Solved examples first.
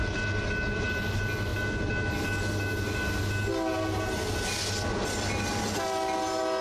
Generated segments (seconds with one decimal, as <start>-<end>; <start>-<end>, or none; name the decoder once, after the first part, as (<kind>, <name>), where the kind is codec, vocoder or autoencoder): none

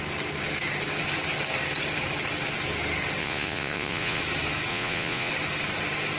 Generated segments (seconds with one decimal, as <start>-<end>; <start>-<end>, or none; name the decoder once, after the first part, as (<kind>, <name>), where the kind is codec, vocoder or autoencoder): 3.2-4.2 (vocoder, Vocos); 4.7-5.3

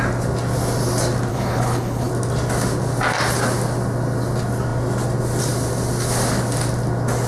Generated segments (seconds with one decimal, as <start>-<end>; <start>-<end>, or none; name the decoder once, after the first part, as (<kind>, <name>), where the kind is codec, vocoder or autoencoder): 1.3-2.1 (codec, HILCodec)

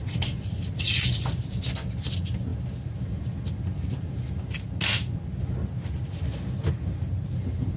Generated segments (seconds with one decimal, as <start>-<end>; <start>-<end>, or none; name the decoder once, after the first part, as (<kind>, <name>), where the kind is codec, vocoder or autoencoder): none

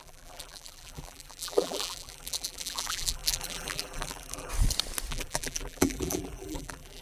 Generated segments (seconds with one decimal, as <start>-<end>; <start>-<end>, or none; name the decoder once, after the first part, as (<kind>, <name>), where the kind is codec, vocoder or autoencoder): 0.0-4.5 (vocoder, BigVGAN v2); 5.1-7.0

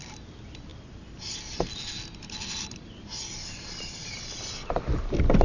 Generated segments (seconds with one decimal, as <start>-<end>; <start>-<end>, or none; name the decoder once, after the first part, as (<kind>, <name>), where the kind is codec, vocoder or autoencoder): none